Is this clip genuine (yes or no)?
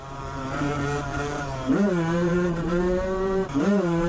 no